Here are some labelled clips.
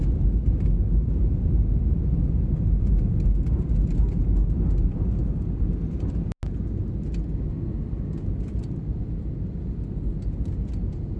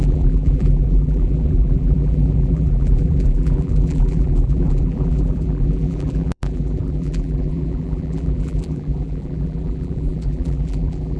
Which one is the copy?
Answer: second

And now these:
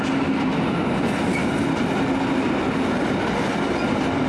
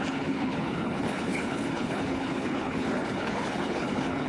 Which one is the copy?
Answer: second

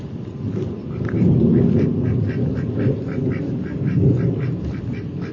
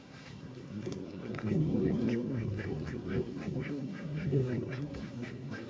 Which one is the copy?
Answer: second